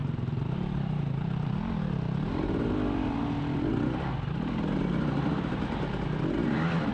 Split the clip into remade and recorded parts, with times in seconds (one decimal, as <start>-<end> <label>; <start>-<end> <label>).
0.0-6.9 recorded